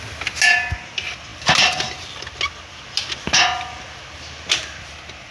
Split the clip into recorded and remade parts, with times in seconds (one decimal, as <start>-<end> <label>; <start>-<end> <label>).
0.0-5.3 recorded

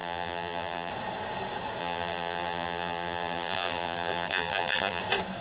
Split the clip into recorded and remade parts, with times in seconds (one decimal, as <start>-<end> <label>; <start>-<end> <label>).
0.0-0.9 remade; 0.9-1.8 recorded; 1.8-5.0 remade; 5.0-5.4 recorded

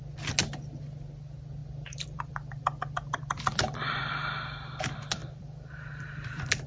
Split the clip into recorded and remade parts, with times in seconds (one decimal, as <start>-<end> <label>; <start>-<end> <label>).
0.0-1.6 recorded; 1.6-4.1 remade; 4.1-5.2 recorded; 5.2-5.9 remade; 5.9-6.7 recorded

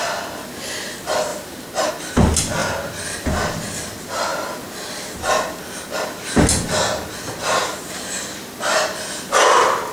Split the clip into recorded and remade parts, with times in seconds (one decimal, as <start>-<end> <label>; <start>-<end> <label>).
0.0-1.3 recorded; 1.3-1.9 remade; 1.9-9.9 recorded

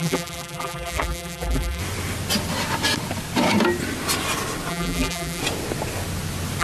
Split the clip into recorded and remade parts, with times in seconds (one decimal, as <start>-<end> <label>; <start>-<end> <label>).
0.0-1.8 remade; 1.8-4.7 recorded; 4.7-5.4 remade; 5.4-6.6 recorded